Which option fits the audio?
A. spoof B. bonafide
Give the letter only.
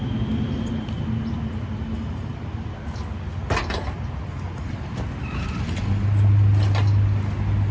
B